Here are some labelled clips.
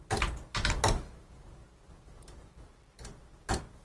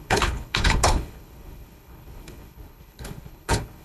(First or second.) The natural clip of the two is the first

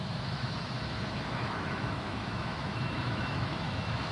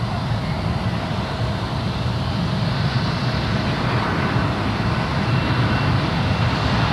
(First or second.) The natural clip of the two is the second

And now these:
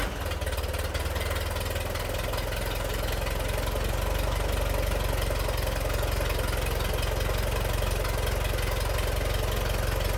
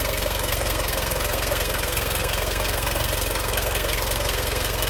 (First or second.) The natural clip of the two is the first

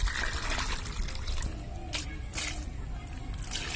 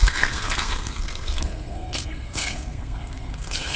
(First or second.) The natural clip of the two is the first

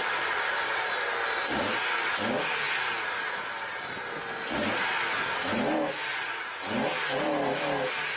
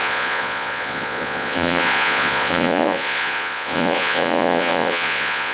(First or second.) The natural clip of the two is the first